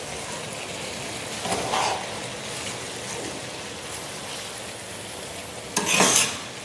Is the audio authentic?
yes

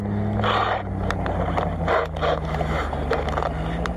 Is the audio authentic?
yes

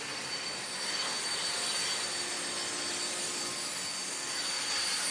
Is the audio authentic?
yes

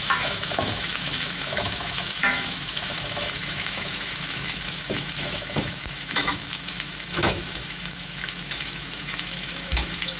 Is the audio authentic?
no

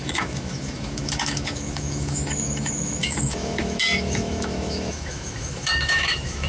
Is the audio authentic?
no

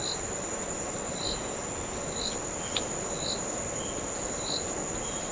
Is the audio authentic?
yes